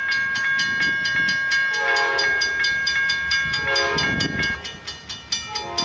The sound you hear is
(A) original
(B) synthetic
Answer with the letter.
A